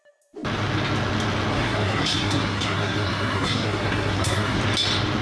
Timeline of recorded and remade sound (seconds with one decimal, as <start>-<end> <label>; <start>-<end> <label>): 0.0-1.5 recorded; 1.5-4.6 remade; 4.6-5.2 recorded